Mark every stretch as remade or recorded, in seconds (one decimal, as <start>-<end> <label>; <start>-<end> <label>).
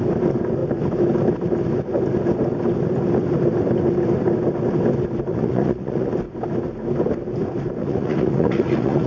0.0-5.3 recorded; 5.3-6.1 remade; 6.1-7.8 recorded; 7.8-9.1 remade